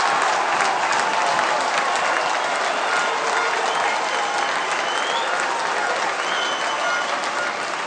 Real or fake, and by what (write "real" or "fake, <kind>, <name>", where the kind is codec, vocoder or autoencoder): real